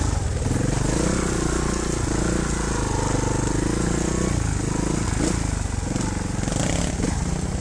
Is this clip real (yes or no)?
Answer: yes